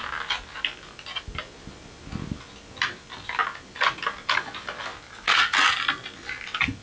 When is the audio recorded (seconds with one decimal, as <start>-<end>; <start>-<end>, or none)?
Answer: 0.0-6.8